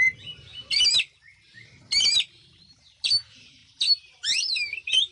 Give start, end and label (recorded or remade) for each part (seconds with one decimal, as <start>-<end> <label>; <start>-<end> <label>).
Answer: 0.0-0.5 remade; 0.5-2.6 recorded; 2.6-5.1 remade